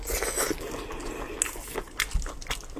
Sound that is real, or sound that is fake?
real